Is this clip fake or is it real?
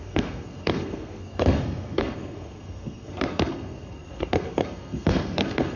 fake